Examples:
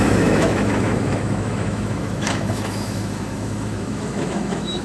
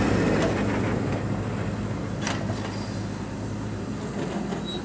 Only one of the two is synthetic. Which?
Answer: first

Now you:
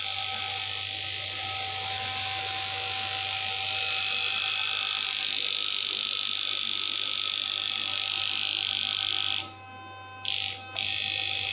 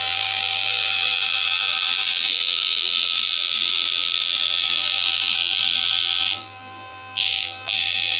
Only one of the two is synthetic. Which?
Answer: second